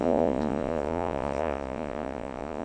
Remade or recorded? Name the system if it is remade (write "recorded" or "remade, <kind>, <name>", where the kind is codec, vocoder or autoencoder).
remade, vocoder, Vocos